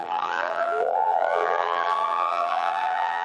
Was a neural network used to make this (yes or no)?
yes